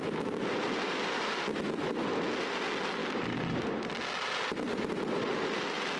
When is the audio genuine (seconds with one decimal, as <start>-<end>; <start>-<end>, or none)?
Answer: 0.0-6.0